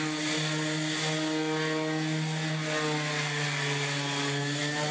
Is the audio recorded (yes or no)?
yes